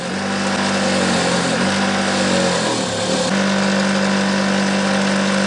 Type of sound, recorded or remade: recorded